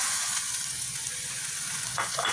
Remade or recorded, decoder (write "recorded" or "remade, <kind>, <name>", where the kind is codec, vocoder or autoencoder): remade, vocoder, Vocos